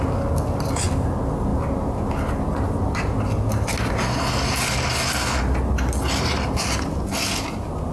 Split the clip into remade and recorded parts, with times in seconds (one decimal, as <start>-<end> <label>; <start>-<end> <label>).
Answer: 0.0-7.9 recorded